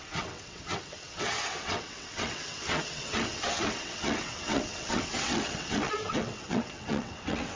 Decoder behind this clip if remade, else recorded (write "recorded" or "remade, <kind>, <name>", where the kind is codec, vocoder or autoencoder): remade, vocoder, WaveNeXt